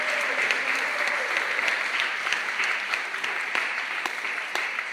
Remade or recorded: remade